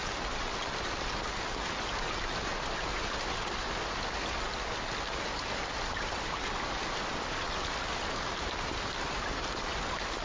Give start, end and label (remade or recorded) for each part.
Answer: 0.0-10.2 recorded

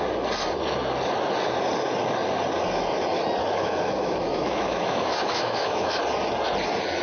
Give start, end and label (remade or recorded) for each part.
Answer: 0.0-3.4 recorded; 3.4-6.0 remade; 6.0-7.0 recorded

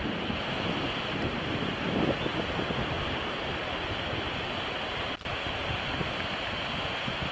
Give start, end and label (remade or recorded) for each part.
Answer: 0.0-7.3 recorded

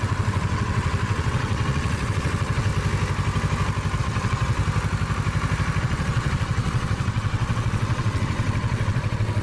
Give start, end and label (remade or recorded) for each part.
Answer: 0.0-2.7 remade; 2.7-4.0 recorded; 4.0-4.6 remade; 4.6-5.8 recorded; 5.8-9.4 remade